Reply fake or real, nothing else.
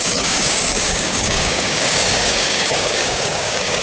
fake